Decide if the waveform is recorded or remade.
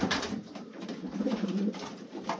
remade